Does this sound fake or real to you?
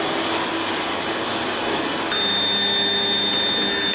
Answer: real